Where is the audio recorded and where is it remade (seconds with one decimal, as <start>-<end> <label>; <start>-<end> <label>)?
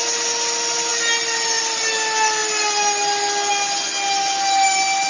0.0-5.1 recorded